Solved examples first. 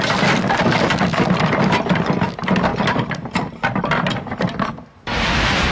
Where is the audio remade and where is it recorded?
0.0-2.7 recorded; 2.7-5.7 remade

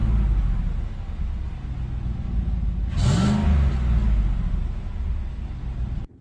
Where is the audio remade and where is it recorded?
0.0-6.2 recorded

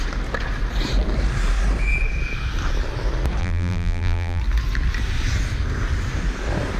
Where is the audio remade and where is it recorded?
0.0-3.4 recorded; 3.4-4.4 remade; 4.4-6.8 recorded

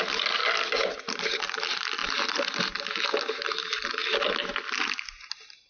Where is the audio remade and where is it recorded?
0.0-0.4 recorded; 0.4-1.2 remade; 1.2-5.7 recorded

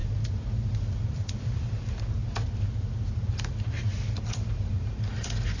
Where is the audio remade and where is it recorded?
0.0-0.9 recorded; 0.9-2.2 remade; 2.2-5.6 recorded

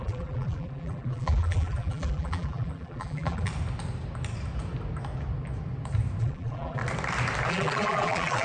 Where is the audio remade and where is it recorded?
0.0-3.5 remade; 3.5-6.2 recorded; 6.2-6.8 remade; 6.8-7.5 recorded; 7.5-8.4 remade

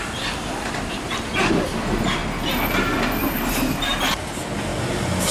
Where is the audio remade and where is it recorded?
0.0-2.2 remade; 2.2-3.2 recorded; 3.2-4.7 remade; 4.7-5.3 recorded

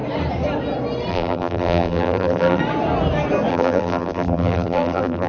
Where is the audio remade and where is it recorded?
0.0-1.1 recorded; 1.1-2.6 remade; 2.6-3.5 recorded; 3.5-5.3 remade